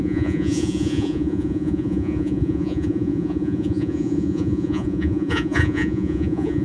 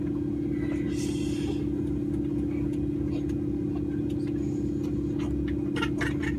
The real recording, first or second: second